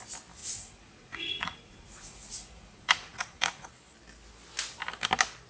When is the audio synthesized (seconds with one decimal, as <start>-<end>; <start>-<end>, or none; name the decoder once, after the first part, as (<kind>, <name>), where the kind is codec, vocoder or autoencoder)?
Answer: 0.4-3.7 (vocoder, Vocos)